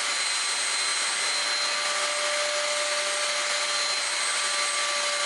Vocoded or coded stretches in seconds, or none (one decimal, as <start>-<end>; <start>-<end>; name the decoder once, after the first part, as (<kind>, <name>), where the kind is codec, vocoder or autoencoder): none